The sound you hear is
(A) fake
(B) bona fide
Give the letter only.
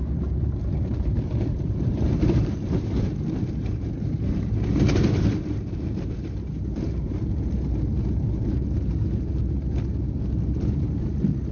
A